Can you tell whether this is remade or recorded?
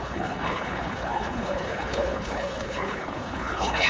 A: remade